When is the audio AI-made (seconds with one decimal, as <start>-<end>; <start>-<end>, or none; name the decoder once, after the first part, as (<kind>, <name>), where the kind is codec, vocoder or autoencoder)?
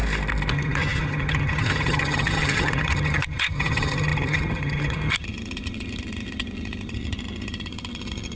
0.5-8.4 (vocoder, HiFi-GAN)